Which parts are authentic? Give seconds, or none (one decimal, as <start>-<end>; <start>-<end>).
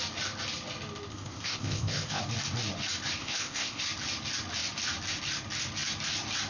0.0-1.1; 2.2-3.2; 3.8-6.5